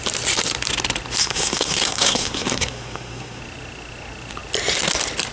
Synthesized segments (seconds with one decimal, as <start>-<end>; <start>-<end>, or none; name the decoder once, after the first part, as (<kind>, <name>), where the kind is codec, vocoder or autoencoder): 1.2-3.4 (codec, SNAC)